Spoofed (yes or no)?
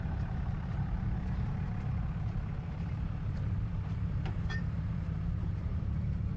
yes